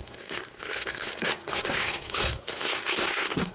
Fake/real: fake